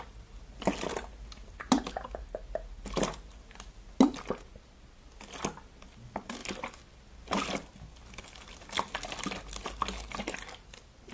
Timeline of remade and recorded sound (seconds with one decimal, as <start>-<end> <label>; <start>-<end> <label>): 0.0-11.1 recorded